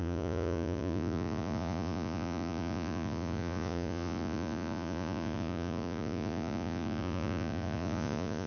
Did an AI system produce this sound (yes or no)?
yes